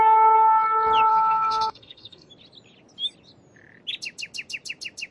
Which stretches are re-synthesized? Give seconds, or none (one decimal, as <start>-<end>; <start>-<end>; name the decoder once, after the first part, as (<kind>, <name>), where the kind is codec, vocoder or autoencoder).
1.1-2.3 (codec, SNAC)

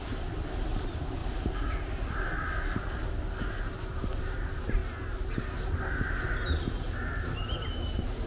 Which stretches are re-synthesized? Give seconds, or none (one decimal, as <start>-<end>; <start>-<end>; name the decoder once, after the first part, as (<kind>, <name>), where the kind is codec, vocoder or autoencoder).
none